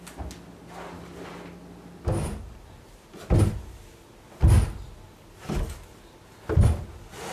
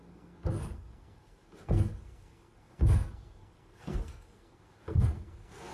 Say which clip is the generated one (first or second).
second